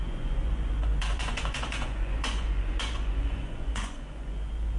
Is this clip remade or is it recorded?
remade